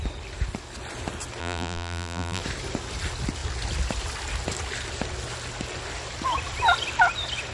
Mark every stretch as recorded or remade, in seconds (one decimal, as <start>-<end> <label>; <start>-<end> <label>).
0.0-1.4 recorded; 1.4-2.4 remade; 2.4-7.5 recorded